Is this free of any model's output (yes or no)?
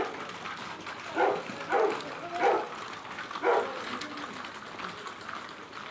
yes